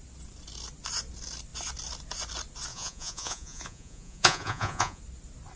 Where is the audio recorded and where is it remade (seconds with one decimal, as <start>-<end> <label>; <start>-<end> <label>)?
0.0-2.7 recorded; 2.7-5.0 remade; 5.0-5.6 recorded